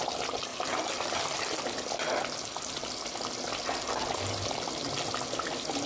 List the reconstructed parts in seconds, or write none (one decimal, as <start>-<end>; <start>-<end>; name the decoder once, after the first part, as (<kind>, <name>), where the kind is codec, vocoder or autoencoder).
0.5-1.6 (vocoder, BigVGAN v2)